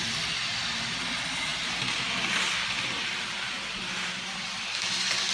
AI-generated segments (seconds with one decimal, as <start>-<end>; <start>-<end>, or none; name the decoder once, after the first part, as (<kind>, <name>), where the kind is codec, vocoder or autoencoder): none